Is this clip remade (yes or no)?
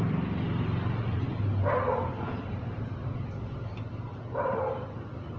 yes